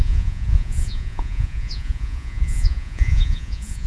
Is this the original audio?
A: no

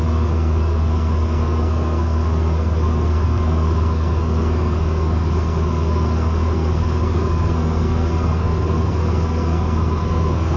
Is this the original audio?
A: no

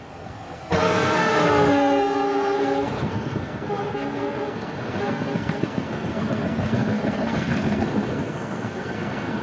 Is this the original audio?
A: no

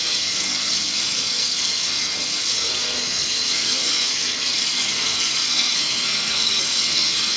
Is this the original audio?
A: no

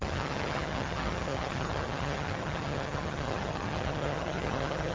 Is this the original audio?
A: no